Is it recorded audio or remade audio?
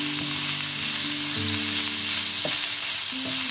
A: recorded